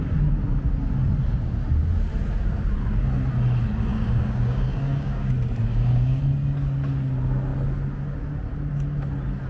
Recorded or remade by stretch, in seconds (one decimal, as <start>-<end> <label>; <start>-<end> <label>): 0.0-3.9 recorded; 3.9-5.3 remade; 5.3-5.7 recorded; 5.7-6.2 remade; 6.2-9.5 recorded